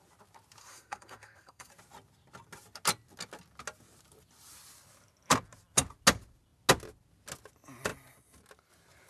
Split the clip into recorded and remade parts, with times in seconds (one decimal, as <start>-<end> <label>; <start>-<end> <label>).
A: 0.0-0.6 recorded; 0.6-1.7 remade; 1.7-9.1 recorded